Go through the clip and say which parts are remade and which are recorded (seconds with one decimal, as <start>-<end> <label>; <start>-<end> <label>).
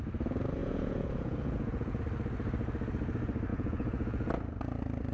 0.0-0.6 recorded; 0.6-2.0 remade; 2.0-3.5 recorded; 3.5-4.3 remade; 4.3-5.1 recorded